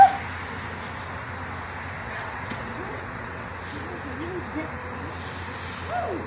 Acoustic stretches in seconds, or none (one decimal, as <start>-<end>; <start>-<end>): 0.0-2.0; 3.5-6.3